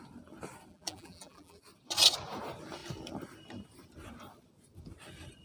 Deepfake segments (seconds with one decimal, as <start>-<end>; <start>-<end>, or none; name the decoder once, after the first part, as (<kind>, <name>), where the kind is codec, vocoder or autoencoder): 0.7-1.6 (vocoder, BigVGAN v2)